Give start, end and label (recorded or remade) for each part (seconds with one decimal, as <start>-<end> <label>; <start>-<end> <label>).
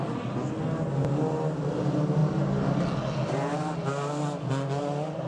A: 0.0-5.3 recorded